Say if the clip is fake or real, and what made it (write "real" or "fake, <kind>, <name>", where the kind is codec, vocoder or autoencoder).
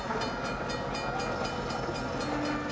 real